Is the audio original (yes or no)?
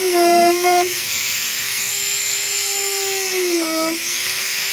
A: no